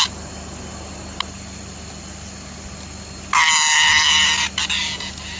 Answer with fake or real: real